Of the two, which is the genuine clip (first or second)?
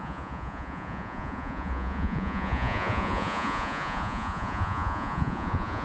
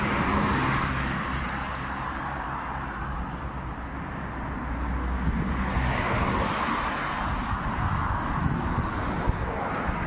second